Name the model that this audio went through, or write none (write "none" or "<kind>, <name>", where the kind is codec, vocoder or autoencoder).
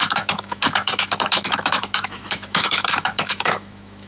autoencoder, DAC-VAE